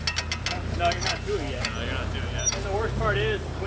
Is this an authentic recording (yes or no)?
yes